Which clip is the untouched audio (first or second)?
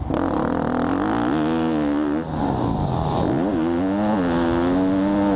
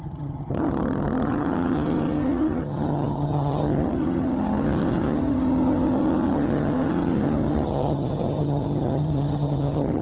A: first